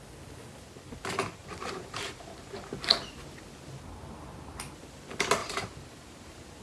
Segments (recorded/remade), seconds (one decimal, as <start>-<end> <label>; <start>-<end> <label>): 0.0-1.4 recorded; 1.4-2.5 remade; 2.5-5.4 recorded; 5.4-6.6 remade